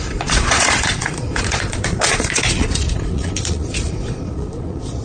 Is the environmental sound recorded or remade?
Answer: remade